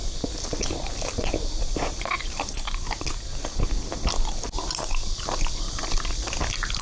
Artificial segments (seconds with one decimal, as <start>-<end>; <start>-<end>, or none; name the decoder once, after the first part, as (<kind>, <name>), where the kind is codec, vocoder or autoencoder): none